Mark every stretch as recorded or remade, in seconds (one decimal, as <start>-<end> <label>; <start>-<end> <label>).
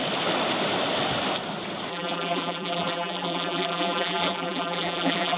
0.0-1.9 recorded; 1.9-5.4 remade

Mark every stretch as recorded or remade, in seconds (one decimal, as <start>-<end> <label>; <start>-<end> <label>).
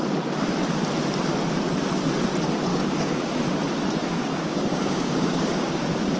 0.0-2.7 recorded; 2.7-3.4 remade; 3.4-4.0 recorded; 4.0-6.2 remade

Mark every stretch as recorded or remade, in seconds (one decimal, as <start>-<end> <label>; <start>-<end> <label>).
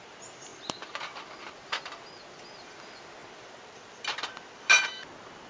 0.0-5.5 recorded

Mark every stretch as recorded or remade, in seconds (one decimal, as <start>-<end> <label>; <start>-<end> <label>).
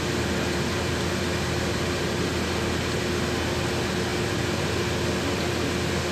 0.0-6.1 recorded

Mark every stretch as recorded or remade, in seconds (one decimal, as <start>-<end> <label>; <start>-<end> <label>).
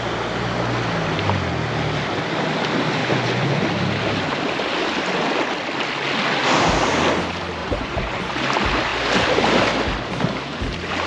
0.0-3.0 recorded; 3.0-3.6 remade; 3.6-7.6 recorded; 7.6-8.3 remade; 8.3-11.1 recorded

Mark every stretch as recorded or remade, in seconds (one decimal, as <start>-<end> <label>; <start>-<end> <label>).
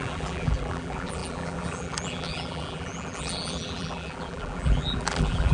0.0-5.5 remade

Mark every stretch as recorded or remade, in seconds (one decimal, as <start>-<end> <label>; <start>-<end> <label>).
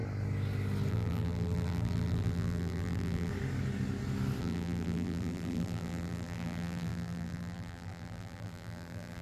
0.0-0.9 recorded; 0.9-3.3 remade; 3.3-4.4 recorded; 4.4-9.2 remade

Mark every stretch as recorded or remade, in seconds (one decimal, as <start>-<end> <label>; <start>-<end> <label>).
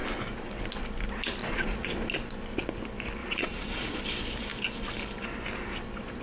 0.0-1.4 recorded; 1.4-2.1 remade; 2.1-3.2 recorded; 3.2-4.0 remade; 4.0-6.2 recorded